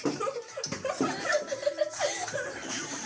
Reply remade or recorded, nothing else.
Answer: remade